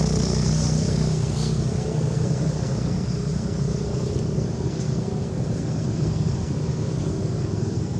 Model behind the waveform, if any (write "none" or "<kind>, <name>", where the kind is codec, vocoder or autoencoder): codec, SNAC